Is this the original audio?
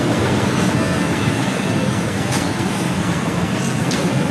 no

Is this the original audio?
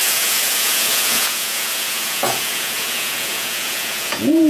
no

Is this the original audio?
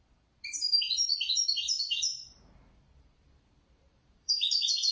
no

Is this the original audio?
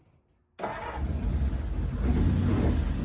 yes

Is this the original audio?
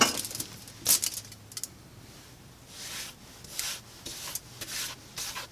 yes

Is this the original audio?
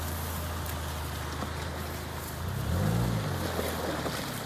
yes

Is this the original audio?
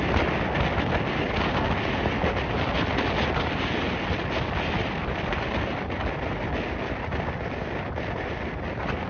yes